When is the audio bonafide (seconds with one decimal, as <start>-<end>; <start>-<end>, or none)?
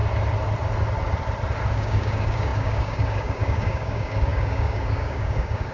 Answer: 0.0-1.7